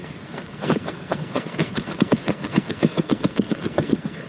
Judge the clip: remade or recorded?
remade